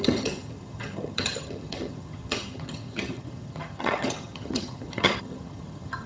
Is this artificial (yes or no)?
yes